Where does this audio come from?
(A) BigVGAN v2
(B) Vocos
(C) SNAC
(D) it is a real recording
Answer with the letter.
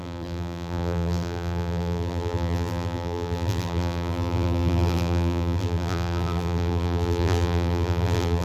A